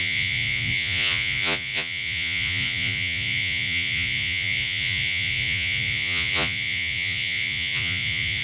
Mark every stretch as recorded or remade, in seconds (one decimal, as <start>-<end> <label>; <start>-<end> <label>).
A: 0.0-8.4 remade